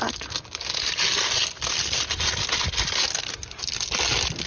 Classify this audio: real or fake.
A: real